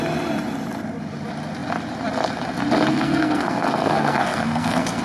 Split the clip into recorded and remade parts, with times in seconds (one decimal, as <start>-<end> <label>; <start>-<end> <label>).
0.0-2.9 recorded; 2.9-5.0 remade